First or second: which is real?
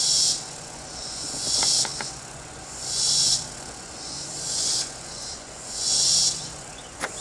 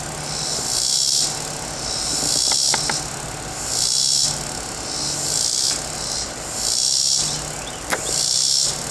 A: second